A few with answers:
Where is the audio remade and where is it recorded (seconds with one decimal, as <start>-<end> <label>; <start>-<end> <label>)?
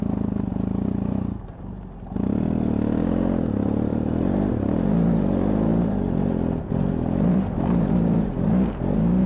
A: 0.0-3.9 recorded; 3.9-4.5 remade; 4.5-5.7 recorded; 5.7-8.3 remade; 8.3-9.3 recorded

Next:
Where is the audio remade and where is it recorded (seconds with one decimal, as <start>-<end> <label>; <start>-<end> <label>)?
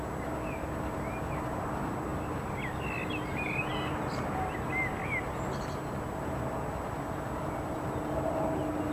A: 0.0-8.9 recorded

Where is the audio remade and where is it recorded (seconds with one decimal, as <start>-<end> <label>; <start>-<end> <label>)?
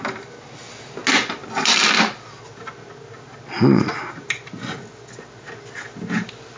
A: 0.0-6.6 recorded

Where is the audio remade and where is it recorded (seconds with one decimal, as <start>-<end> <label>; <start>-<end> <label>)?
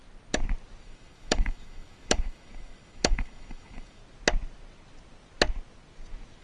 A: 0.0-0.8 recorded; 0.8-4.0 remade; 4.0-6.4 recorded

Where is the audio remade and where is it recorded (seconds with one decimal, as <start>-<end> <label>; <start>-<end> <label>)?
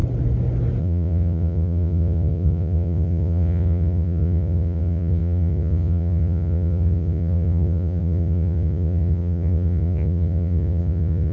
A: 0.0-0.8 recorded; 0.8-11.3 remade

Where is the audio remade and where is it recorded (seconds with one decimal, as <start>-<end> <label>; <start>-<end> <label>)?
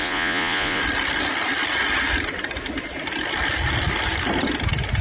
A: 0.0-0.8 remade; 0.8-5.0 recorded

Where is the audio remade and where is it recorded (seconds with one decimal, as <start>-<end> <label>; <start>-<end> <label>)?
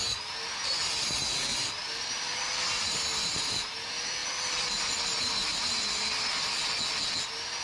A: 0.0-1.5 recorded; 1.5-3.4 remade; 3.4-4.2 recorded; 4.2-6.3 remade; 6.3-7.6 recorded